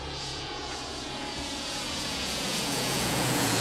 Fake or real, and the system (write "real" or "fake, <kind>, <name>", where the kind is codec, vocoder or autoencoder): fake, vocoder, Vocos